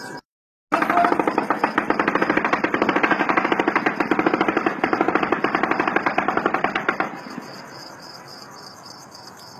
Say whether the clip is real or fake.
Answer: real